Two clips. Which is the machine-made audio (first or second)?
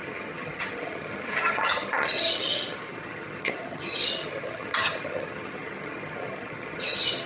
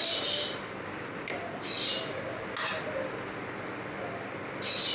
first